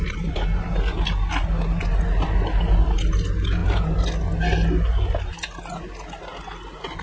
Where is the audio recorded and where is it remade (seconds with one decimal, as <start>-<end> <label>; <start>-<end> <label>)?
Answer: 0.0-7.0 recorded